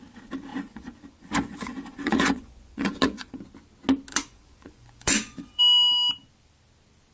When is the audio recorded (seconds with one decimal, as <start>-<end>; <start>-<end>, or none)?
0.0-0.5; 3.4-4.1; 5.6-7.1